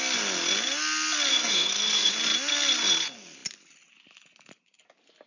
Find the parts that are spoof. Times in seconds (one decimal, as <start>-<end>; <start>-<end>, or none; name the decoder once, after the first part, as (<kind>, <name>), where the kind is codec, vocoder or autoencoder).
1.3-2.1 (codec, SNAC)

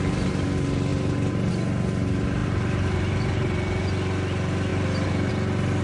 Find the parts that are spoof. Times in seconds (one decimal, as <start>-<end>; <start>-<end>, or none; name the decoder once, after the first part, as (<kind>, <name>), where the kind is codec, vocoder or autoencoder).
none

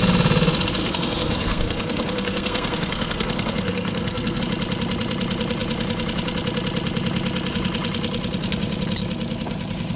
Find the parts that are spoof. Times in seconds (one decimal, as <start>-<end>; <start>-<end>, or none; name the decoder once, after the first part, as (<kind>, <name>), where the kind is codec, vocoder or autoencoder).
0.8-4.4 (codec, SNAC)

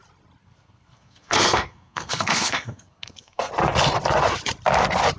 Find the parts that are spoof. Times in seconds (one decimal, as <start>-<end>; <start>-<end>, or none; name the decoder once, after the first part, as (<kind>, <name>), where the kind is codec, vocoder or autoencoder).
0.4-3.5 (codec, SNAC)

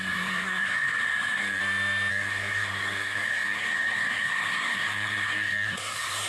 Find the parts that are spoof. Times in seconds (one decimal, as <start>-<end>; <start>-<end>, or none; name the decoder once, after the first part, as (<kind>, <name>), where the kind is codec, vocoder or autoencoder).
0.0-1.6 (codec, SNAC); 2.1-6.3

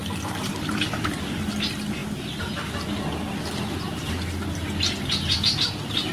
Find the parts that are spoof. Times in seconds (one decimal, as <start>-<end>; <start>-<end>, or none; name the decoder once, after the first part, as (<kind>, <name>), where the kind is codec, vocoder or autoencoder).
none